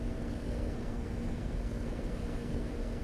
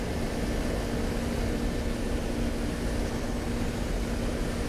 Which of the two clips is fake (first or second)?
first